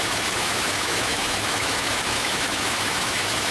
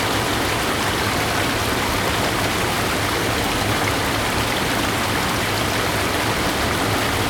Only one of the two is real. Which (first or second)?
second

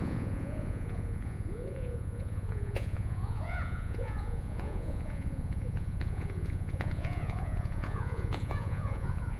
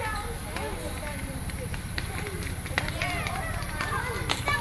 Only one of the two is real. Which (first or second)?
second